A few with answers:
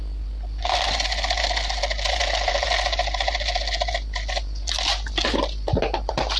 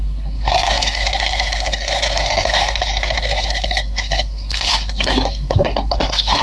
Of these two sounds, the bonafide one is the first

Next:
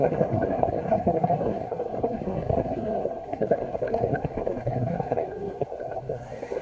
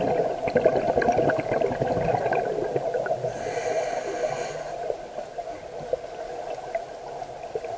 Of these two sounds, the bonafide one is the second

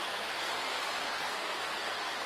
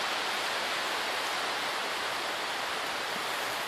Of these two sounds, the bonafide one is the second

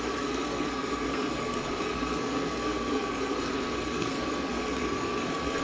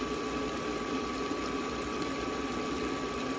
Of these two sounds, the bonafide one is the second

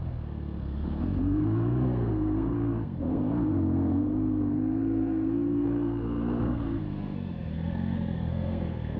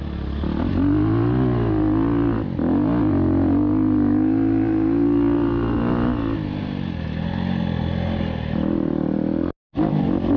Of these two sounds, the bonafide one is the second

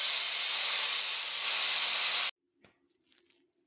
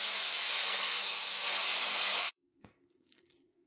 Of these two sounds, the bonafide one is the first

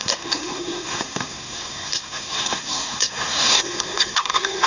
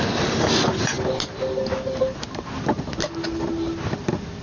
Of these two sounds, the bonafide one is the second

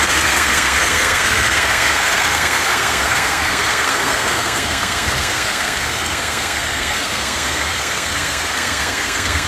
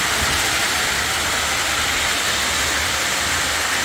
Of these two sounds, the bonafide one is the second